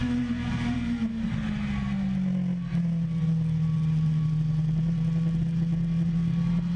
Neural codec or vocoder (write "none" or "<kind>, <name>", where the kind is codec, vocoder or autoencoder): none